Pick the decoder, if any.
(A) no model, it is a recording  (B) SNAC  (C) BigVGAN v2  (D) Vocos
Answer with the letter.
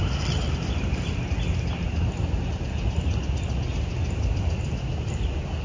A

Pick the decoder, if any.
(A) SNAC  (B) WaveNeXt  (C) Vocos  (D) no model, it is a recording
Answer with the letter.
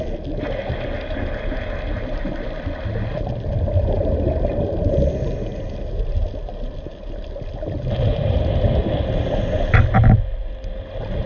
D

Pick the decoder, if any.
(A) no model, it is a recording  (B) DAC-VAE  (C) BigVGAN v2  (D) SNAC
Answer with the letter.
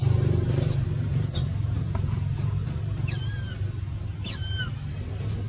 A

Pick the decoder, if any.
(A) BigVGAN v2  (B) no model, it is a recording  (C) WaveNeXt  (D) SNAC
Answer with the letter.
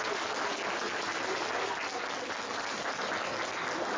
B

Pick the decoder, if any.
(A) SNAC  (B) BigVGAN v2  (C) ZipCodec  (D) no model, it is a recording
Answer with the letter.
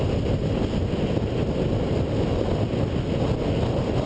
D